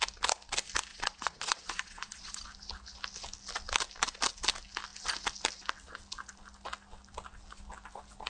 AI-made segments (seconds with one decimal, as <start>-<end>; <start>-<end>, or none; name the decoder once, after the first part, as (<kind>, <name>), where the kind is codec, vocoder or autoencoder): 0.9-2.4 (vocoder, Vocos)